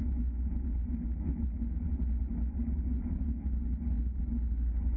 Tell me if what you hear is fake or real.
real